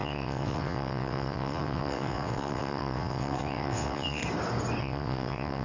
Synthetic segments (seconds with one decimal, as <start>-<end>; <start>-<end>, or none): 0.0-4.2; 4.8-5.6

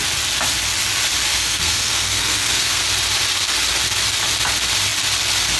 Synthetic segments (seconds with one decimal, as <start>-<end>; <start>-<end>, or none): 1.3-2.8